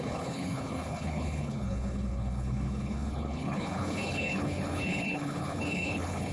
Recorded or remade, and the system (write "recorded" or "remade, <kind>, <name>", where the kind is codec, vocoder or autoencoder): remade, codec, HILCodec